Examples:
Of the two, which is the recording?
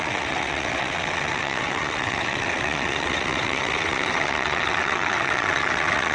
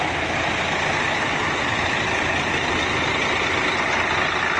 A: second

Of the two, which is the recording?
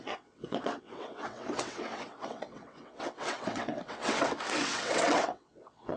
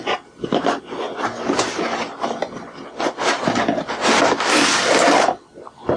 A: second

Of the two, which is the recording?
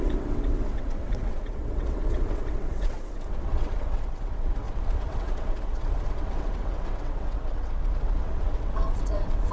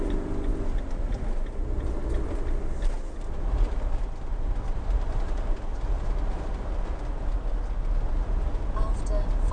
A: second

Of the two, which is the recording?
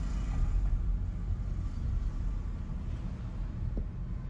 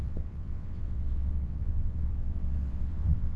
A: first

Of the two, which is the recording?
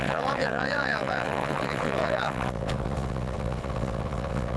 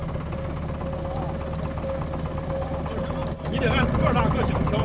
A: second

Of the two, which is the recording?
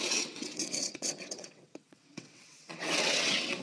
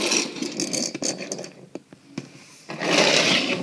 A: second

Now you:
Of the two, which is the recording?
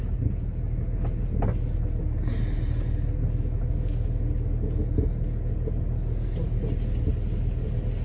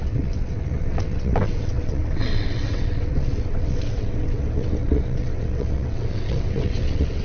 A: first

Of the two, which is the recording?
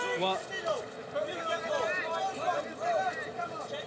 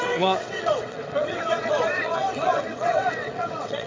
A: first